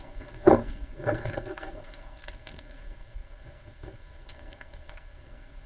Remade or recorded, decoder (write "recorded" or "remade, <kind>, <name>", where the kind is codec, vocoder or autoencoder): remade, codec, SNAC